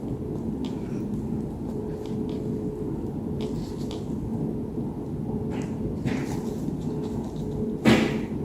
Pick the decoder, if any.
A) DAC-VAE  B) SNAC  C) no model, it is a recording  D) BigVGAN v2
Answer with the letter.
C